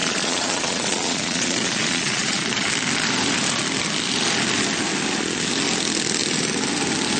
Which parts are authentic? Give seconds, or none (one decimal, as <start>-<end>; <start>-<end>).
2.7-7.2